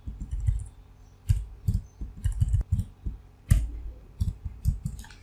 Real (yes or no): yes